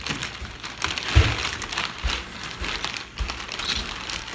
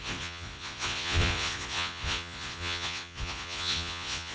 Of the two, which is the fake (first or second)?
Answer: second